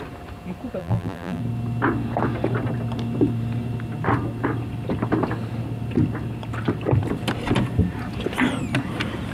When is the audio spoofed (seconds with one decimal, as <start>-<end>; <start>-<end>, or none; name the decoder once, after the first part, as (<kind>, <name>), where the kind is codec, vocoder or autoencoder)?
0.8-1.4 (vocoder, BigVGAN v2)

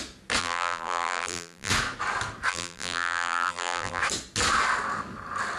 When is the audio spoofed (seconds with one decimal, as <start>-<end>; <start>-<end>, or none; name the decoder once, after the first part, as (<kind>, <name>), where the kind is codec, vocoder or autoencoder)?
0.4-1.7 (vocoder, BigVGAN v2); 2.5-4.0